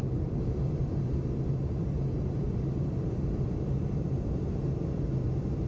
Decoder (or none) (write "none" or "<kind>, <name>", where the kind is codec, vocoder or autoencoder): vocoder, BigVGAN v2